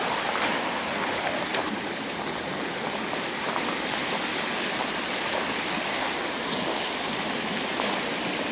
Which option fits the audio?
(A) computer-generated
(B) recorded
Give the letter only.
B